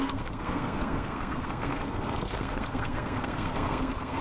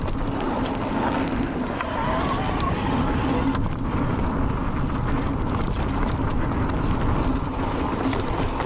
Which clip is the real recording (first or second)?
second